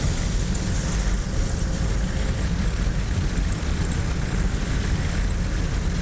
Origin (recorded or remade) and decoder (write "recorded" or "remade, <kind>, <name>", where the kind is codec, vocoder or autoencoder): recorded